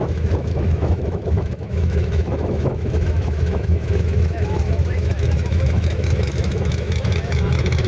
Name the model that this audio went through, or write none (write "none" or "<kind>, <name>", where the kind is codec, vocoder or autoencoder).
autoencoder, DAC-VAE